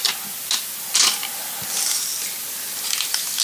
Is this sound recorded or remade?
recorded